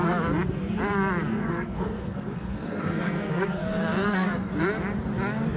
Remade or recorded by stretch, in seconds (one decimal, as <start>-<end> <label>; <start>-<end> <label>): 0.0-1.3 recorded; 1.3-4.5 remade; 4.5-5.6 recorded